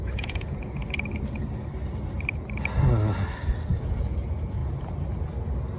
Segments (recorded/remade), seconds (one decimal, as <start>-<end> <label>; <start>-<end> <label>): 0.0-0.8 remade; 0.8-3.7 recorded; 3.7-4.6 remade; 4.6-5.8 recorded